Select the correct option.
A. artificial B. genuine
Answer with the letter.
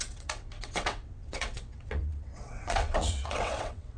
A